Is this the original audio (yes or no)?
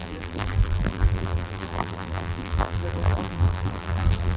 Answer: no